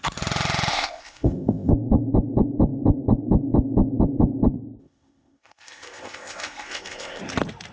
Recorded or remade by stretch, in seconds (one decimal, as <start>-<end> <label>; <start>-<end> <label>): 0.0-0.7 recorded; 0.7-1.7 remade; 1.7-4.8 recorded; 4.8-7.2 remade; 7.2-7.7 recorded